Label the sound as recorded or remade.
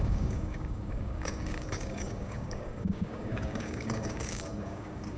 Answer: remade